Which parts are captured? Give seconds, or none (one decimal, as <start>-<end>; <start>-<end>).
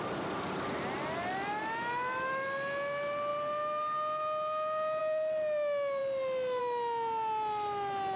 0.0-8.2